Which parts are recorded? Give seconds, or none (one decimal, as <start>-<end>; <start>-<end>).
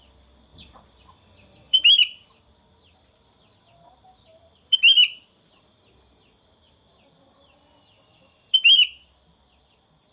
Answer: 0.0-0.5; 2.0-4.3; 4.8-10.1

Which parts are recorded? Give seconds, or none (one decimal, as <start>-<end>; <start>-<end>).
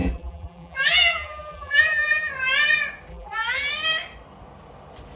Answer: 2.3-3.1; 3.7-5.2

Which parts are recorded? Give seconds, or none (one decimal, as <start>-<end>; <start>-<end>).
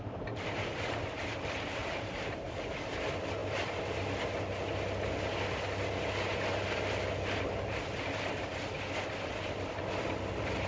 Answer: 0.0-1.8; 2.7-10.7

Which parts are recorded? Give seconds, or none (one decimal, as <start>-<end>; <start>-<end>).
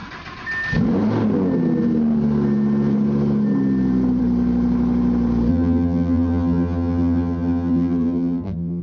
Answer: 0.0-5.5